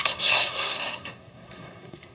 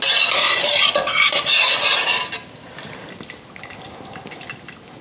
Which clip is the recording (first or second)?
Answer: second